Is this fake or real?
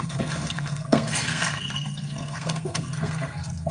fake